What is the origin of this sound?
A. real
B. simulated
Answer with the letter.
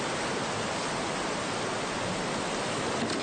A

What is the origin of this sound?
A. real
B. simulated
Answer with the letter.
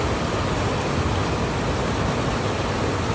A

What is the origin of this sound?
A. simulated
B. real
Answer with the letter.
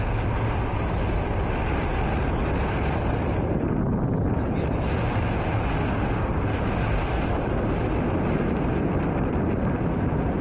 B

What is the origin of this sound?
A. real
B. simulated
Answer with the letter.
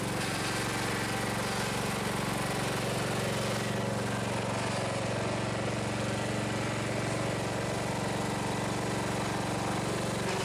A